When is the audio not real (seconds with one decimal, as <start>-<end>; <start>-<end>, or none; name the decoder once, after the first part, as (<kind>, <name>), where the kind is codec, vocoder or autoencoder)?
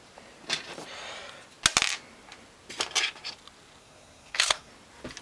3.8-4.7 (codec, SNAC)